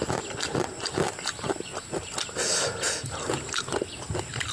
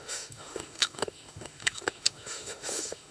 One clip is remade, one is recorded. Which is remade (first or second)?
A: second